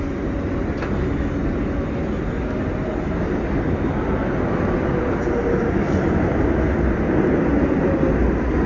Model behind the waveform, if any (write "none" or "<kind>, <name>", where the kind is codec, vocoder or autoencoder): none